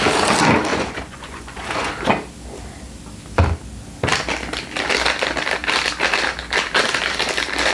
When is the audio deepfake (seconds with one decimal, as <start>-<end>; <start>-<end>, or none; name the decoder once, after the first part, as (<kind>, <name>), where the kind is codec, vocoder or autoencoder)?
0.7-1.9 (vocoder, Vocos)